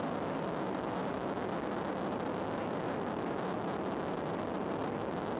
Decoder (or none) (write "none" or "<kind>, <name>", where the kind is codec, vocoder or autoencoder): none